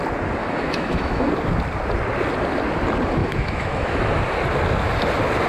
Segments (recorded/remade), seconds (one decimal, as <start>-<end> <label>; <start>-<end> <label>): 0.0-0.4 recorded; 0.4-1.3 remade; 1.3-3.2 recorded; 3.2-4.0 remade; 4.0-5.5 recorded